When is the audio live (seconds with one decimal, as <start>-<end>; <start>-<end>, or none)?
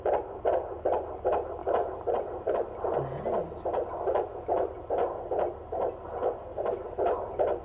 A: 0.0-1.6; 2.7-6.5